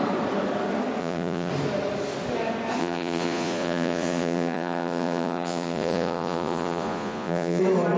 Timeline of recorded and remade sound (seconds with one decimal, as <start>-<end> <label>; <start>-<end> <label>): 0.0-1.0 recorded; 1.0-1.5 remade; 1.5-2.8 recorded; 2.8-7.6 remade; 7.6-8.0 recorded